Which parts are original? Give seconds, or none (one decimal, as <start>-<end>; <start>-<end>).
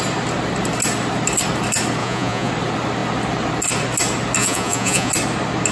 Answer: 0.0-2.0; 2.5-4.4; 5.1-5.7